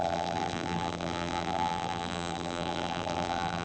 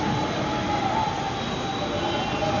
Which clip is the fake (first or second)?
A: first